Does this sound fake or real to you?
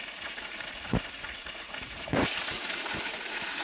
fake